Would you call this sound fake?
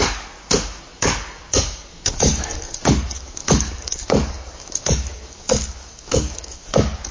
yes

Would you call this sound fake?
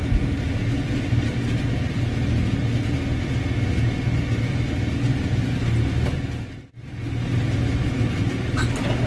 no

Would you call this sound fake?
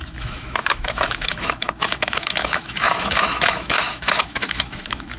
yes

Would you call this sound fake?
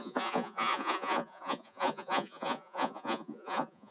yes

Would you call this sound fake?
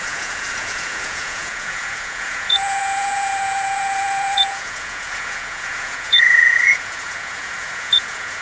yes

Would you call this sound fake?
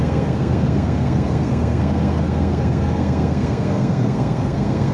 yes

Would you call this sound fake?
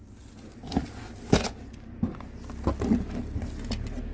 no